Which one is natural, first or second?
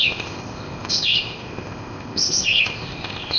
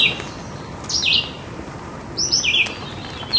second